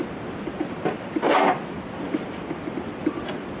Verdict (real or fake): real